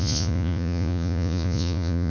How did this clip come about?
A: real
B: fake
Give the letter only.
B